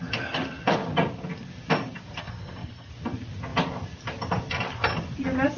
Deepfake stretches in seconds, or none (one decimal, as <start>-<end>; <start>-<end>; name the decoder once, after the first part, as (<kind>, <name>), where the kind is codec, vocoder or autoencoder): 2.2-2.9 (codec, SNAC)